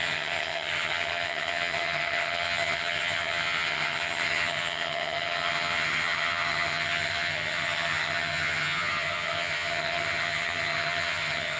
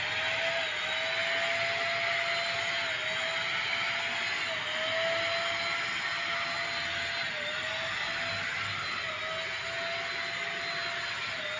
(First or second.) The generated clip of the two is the first